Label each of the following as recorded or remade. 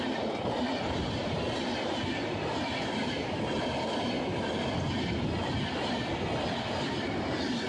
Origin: remade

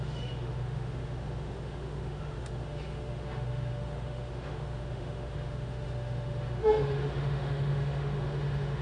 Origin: remade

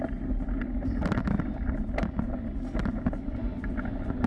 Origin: recorded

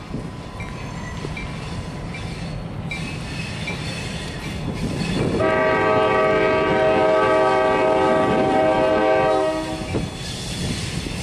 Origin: recorded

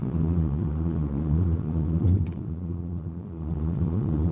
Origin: remade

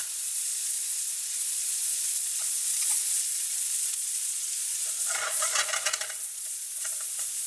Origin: remade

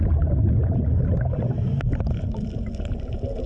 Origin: recorded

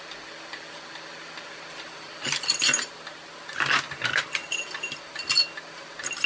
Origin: recorded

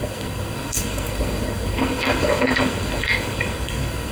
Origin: remade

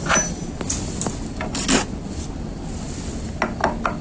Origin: recorded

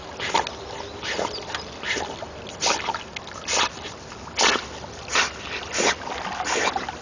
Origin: recorded